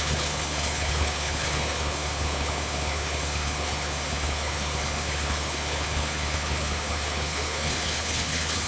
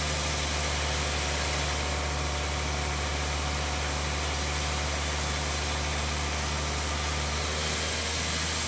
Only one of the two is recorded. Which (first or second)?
second